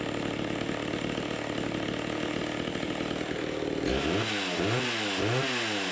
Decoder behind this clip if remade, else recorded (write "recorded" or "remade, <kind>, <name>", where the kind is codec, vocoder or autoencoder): recorded